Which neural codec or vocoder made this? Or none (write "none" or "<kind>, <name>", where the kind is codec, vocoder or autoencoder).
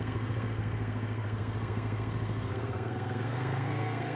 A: codec, SNAC